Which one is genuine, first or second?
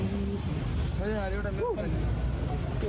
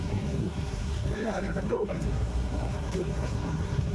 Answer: first